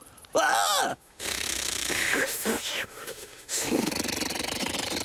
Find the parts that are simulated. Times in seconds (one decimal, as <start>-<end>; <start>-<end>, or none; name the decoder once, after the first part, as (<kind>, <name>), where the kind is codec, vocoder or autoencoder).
0.9-3.9 (autoencoder, DAC-VAE)